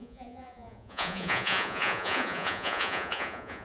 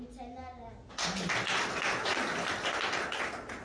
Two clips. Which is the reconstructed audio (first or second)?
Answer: first